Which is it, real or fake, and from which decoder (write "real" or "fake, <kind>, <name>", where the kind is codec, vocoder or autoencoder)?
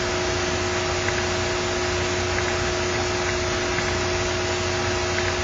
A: real